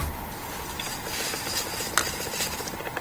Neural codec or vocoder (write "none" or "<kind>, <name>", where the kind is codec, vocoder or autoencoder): none